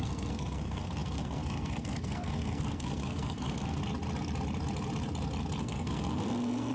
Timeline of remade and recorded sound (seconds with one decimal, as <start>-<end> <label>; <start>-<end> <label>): 0.0-3.8 remade; 3.8-5.6 recorded; 5.6-6.7 remade